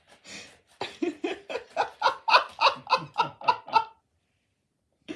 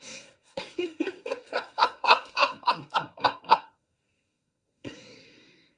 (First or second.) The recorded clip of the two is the first